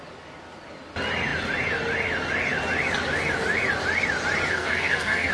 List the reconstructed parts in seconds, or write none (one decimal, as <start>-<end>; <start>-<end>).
4.5-5.3

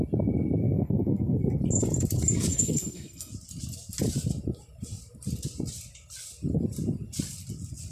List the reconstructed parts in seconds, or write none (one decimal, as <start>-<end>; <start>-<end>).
0.6-1.6; 2.5-3.3